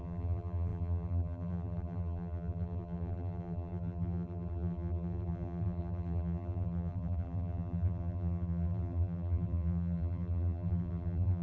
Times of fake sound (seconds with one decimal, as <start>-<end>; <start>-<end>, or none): 0.0-11.4